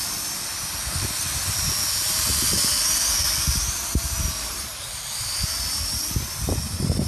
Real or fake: real